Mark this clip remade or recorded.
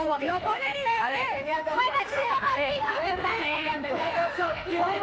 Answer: remade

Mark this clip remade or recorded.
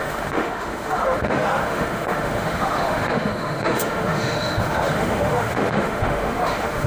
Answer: remade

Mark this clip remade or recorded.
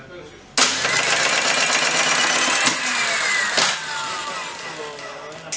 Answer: recorded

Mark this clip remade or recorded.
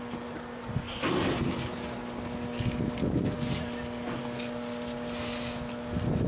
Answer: recorded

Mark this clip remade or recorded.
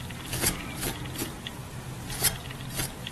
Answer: recorded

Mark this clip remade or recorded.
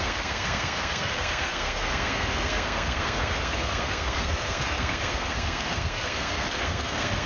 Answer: remade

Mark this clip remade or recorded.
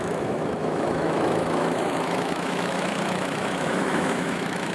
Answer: remade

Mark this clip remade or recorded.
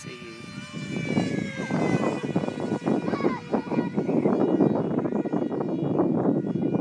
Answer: recorded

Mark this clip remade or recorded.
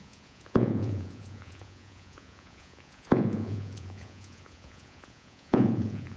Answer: remade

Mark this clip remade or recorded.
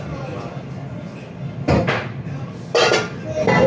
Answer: recorded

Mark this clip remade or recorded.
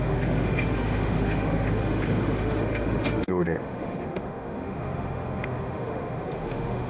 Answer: remade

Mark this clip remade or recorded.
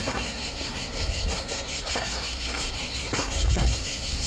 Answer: remade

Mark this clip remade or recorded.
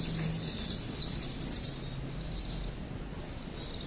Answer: recorded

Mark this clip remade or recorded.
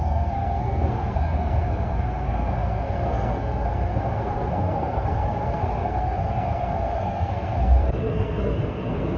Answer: remade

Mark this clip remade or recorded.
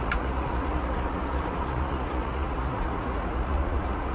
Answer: remade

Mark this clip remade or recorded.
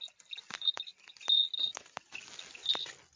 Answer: recorded